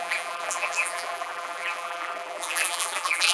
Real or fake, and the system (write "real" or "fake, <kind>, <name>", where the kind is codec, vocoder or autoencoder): fake, vocoder, BigVGAN v2